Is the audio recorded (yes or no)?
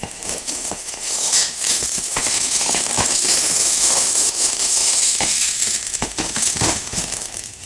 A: no